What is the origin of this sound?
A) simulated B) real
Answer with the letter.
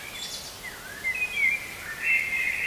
B